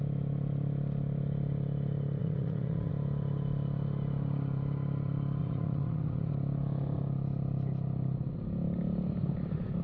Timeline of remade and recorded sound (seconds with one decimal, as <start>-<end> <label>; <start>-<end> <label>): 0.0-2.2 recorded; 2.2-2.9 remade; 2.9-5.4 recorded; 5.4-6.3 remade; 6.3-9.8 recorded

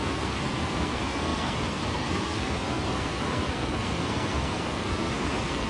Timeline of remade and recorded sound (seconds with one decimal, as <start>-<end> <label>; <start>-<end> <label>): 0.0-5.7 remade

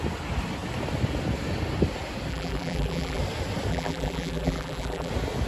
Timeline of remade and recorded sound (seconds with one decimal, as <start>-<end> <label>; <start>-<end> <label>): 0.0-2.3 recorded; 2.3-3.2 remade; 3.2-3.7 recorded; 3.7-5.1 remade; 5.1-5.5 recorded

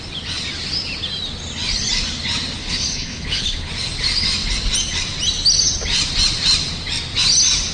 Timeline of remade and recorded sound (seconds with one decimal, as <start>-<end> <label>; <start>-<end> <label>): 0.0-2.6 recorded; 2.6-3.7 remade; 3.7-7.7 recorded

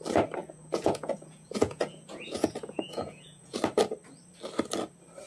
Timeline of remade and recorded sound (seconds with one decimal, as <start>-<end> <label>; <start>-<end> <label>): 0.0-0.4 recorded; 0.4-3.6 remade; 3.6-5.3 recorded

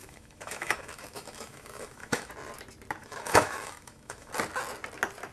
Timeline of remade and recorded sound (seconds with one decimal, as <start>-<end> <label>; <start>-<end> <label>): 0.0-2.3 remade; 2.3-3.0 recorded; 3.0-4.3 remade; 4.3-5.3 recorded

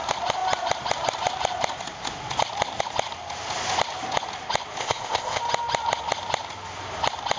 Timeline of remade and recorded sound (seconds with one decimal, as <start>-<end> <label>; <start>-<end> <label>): 0.0-4.8 recorded; 4.8-5.4 remade; 5.4-7.4 recorded